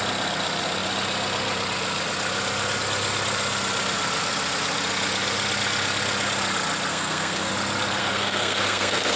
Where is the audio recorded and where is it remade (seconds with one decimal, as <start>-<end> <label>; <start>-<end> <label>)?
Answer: 0.0-6.9 recorded; 6.9-7.5 remade; 7.5-8.0 recorded; 8.0-9.2 remade